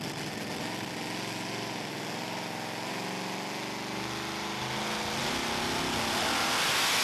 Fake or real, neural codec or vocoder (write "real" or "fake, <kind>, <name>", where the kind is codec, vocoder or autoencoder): real